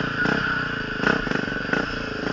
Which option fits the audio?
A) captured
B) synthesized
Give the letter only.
A